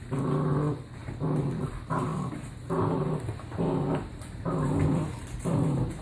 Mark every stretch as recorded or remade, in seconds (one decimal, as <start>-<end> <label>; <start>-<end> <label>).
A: 0.0-6.0 recorded